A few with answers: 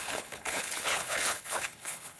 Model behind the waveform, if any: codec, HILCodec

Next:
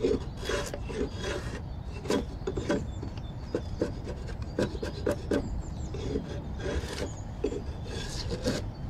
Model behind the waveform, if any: none